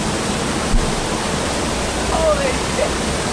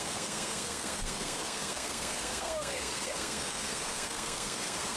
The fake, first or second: second